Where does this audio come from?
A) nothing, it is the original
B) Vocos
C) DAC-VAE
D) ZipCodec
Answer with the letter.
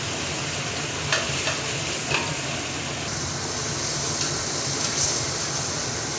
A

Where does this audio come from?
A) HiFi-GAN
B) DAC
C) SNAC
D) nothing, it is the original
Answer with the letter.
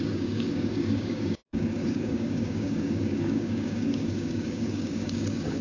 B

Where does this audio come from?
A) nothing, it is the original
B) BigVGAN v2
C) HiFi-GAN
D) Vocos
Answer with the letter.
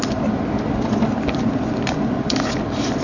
B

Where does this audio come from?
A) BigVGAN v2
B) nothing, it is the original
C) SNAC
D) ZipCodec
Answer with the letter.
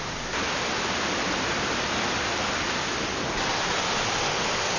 B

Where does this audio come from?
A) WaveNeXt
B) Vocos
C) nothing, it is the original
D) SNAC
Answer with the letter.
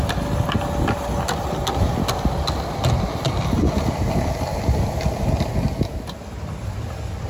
C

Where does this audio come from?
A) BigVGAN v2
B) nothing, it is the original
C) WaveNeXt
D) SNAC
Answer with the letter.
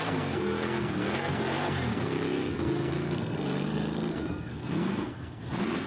D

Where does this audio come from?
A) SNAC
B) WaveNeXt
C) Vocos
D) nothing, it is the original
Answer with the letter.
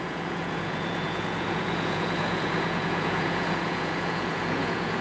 C